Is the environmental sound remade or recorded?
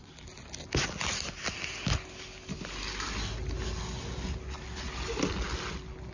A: recorded